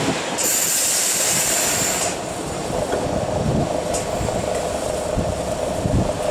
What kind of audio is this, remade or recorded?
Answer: remade